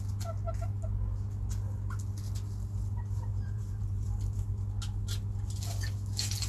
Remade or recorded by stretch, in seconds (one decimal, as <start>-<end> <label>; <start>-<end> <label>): 0.0-3.3 recorded; 3.3-4.1 remade; 4.1-6.5 recorded